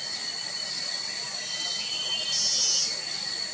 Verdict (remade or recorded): recorded